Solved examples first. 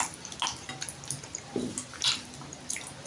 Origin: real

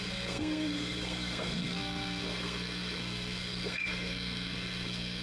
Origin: fake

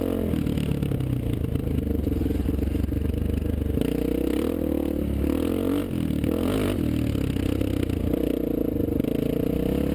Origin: real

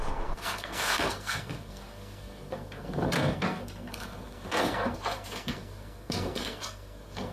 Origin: fake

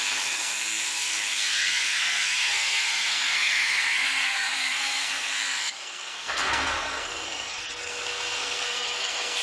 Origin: fake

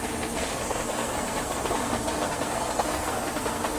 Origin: fake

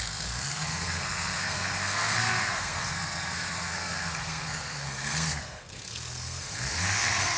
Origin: fake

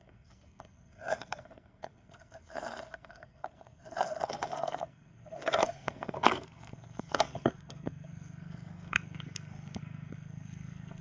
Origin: fake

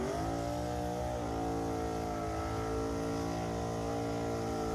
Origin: real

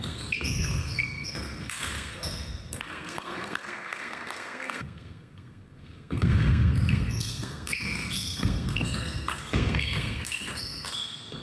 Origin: fake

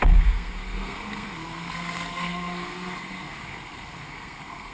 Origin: fake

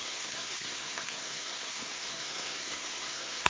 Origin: fake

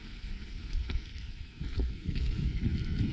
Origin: fake